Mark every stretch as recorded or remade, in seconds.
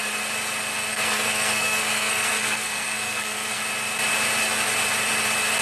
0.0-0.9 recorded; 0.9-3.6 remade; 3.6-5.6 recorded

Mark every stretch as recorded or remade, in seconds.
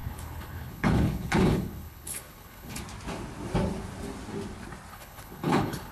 0.0-2.8 remade; 2.8-4.9 recorded; 4.9-5.9 remade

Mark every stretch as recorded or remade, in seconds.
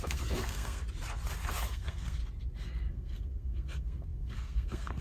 0.0-0.8 remade; 0.8-1.7 recorded; 1.7-2.2 remade; 2.2-2.9 recorded; 2.9-5.0 remade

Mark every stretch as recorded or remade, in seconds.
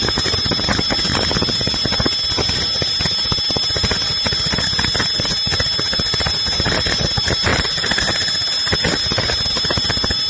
0.0-7.5 recorded; 7.5-8.0 remade; 8.0-10.3 recorded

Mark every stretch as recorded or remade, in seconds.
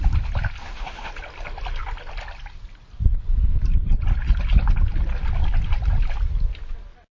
0.0-0.6 recorded; 0.6-1.1 remade; 1.1-7.2 recorded